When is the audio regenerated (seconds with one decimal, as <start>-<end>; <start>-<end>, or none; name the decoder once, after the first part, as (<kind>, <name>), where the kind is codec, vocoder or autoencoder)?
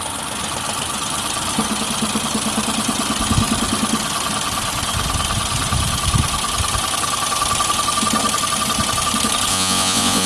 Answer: 9.5-10.3 (vocoder, Vocos)